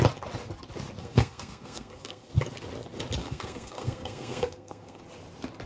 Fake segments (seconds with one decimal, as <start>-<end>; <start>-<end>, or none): 1.0-2.3; 3.2-5.0